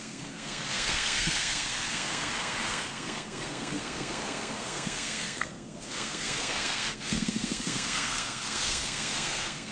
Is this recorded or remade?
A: remade